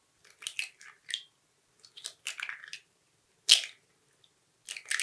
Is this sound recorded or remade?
recorded